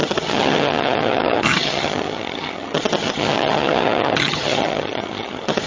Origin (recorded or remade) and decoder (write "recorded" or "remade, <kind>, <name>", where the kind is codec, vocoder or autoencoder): remade, vocoder, HiFi-GAN